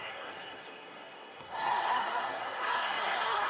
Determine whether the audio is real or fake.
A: fake